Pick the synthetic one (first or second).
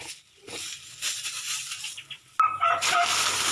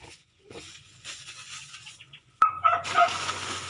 second